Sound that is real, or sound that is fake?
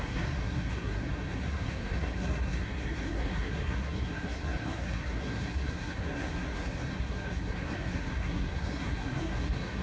fake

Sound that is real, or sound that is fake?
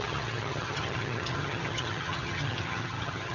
fake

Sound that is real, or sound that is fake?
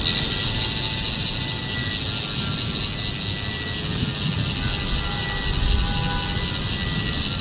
real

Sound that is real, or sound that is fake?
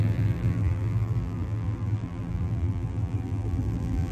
fake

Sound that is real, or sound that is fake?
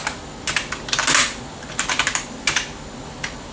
real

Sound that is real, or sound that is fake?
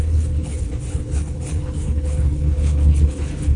fake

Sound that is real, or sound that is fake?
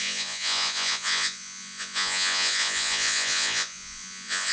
fake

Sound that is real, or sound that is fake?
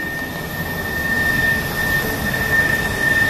real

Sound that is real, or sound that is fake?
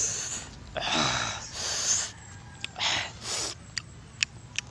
real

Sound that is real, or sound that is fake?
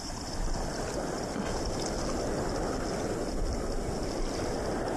real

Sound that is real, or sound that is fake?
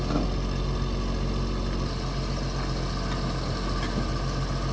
real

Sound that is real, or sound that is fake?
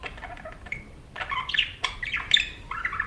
fake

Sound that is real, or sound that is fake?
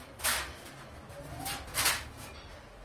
real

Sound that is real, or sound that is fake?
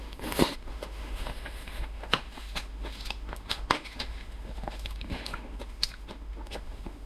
fake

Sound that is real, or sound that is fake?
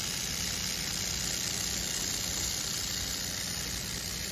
real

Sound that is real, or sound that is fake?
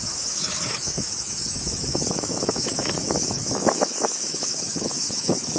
fake